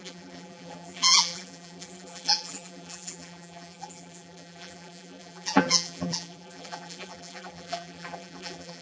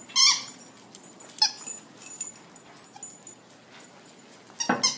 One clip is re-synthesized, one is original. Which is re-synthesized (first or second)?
first